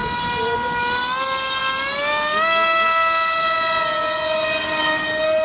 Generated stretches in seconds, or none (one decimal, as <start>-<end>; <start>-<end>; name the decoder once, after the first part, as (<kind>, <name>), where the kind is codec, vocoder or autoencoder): none